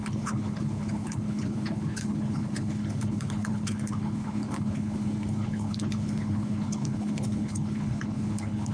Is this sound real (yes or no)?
no